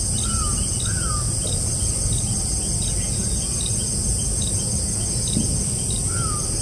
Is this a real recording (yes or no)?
yes